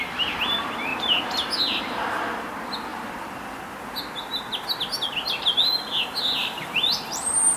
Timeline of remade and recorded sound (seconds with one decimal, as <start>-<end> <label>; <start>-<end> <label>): 0.0-6.4 recorded; 6.4-7.6 remade